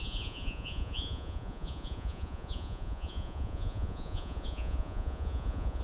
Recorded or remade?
remade